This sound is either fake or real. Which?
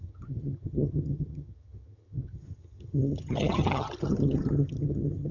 fake